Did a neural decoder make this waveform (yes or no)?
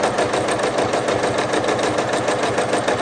no